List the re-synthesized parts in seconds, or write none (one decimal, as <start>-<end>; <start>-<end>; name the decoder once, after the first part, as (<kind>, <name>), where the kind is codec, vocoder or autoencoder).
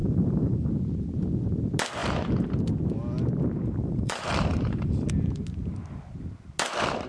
0.0-0.7 (vocoder, BigVGAN v2); 3.8-5.1